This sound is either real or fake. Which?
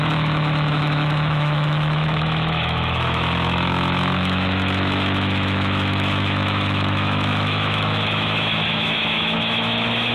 fake